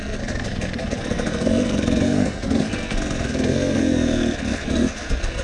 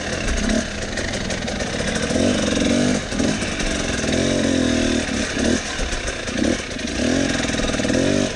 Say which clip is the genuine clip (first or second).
second